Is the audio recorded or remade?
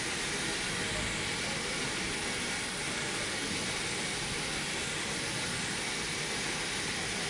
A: recorded